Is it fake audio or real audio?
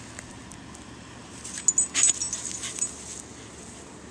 real